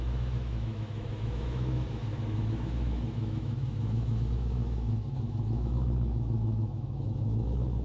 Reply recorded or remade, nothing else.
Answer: remade